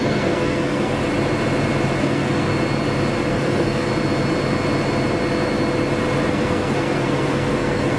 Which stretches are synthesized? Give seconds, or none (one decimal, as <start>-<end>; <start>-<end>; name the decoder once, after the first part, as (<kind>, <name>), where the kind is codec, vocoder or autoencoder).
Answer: 0.0-1.0 (codec, SNAC); 2.0-2.5; 3.3-3.9; 6.3-8.0